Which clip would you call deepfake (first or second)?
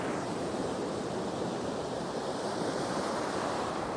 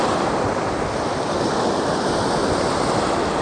first